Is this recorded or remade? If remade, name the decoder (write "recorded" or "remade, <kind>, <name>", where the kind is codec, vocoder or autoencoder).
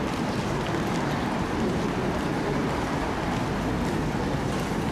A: recorded